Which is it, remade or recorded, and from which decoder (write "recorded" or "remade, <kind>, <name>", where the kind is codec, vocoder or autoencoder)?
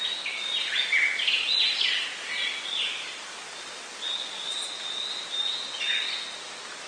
recorded